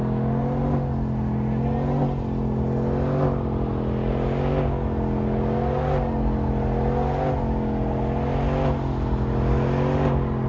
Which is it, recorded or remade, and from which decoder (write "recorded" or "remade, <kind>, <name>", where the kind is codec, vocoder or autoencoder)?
recorded